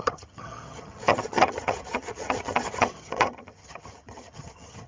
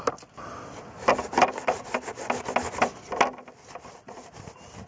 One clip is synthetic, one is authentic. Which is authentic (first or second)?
second